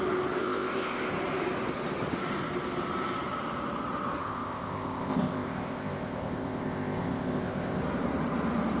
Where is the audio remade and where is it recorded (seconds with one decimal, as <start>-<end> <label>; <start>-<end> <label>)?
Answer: 0.0-0.4 recorded; 0.4-1.1 remade; 1.1-4.2 recorded; 4.2-7.8 remade; 7.8-8.8 recorded